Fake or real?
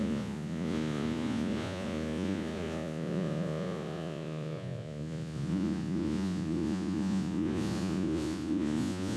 fake